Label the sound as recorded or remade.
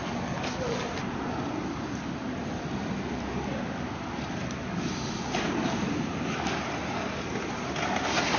recorded